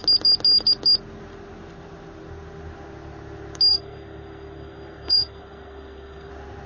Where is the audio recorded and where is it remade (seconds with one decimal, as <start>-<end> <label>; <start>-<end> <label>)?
0.0-3.7 recorded; 3.7-6.3 remade; 6.3-6.7 recorded